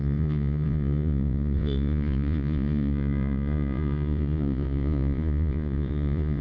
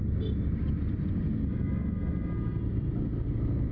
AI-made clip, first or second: first